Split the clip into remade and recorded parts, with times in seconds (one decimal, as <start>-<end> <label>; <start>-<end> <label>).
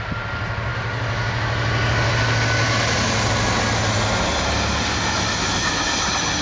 0.0-6.4 recorded